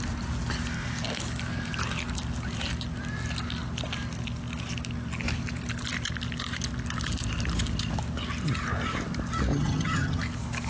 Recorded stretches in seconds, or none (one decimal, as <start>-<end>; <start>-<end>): 0.0-9.5; 10.2-10.7